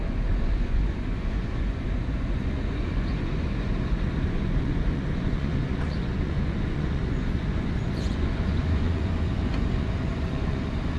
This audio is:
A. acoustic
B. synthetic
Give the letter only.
B